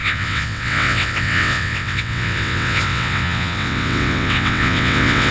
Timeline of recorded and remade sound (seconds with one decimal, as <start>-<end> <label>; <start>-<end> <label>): 0.0-5.3 remade